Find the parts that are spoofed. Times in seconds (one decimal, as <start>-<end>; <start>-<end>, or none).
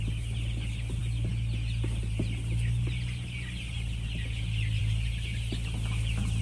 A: none